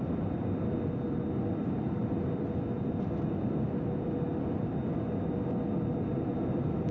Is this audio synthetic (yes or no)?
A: no